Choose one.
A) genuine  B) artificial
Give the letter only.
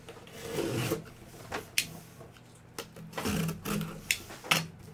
A